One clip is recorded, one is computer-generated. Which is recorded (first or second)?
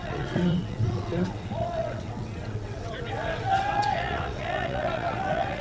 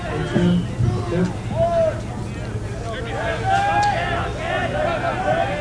second